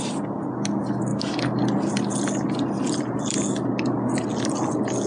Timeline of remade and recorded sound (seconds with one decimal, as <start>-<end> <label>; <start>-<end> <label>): 0.0-5.1 recorded